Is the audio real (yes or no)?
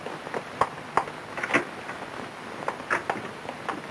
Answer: yes